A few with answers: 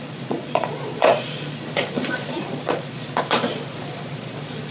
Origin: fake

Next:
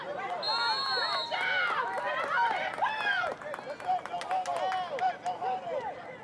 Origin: real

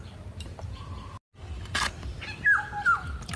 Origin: real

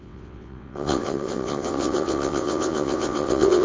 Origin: fake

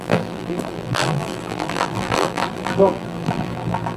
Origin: fake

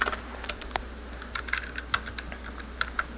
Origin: real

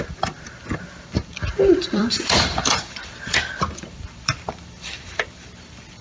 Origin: fake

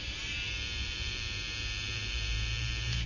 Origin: fake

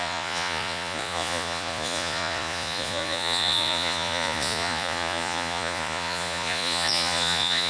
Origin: fake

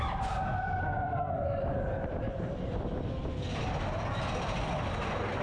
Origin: real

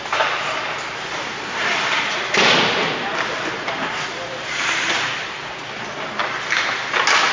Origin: real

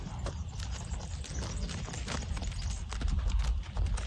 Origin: real